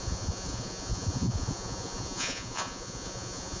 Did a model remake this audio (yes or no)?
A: yes